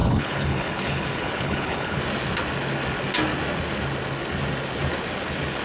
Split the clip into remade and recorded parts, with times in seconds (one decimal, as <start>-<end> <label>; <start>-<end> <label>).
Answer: 0.0-2.0 remade; 2.0-5.6 recorded

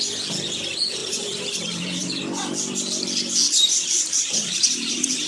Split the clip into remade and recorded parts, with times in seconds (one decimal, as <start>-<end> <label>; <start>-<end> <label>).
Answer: 0.0-1.0 recorded; 1.0-2.2 remade; 2.2-3.4 recorded; 3.4-5.3 remade

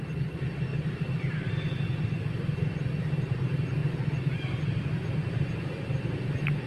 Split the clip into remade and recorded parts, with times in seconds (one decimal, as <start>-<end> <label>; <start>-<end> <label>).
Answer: 0.0-0.7 recorded; 0.7-1.5 remade; 1.5-6.7 recorded